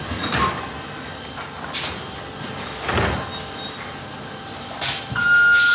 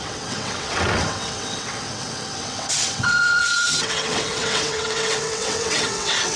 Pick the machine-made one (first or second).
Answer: second